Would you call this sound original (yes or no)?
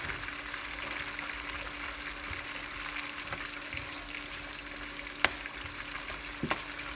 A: yes